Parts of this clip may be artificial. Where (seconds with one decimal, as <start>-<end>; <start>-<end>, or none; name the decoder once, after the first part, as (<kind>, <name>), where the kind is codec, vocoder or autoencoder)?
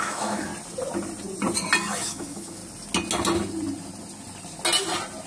0.0-0.5 (autoencoder, DAC-VAE); 1.9-2.6